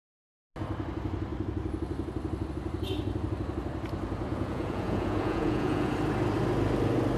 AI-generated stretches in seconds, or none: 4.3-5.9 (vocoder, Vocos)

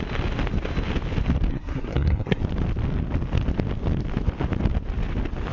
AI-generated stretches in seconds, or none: 1.5-2.4 (codec, SNAC)

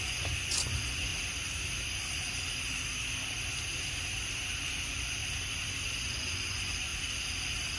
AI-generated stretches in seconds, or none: 0.0-1.1 (vocoder, Vocos); 4.8-5.2; 6.0-6.9

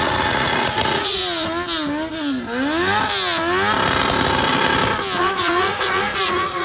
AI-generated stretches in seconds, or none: 0.0-1.2 (vocoder, Vocos); 5.2-6.6

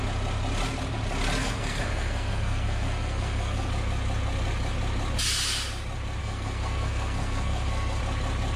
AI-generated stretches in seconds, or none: 1.4-3.7 (codec, SNAC); 6.2-8.0

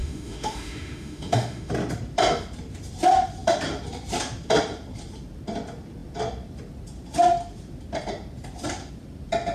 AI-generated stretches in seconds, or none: 0.0-1.7 (autoencoder, DAC-VAE)

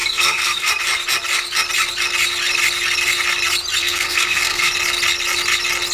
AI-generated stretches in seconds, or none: 0.0-0.7 (codec, SNAC); 3.8-4.7

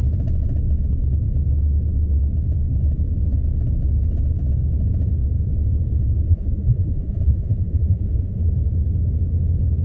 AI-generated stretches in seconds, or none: 6.3-8.5 (vocoder, Vocos)